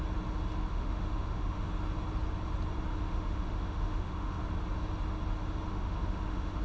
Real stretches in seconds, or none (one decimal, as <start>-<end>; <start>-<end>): 0.0-0.7; 1.7-2.9; 4.4-5.7